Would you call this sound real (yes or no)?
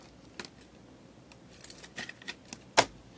yes